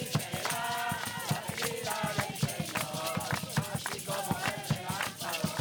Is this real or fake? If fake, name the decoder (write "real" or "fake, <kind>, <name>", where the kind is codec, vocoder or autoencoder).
real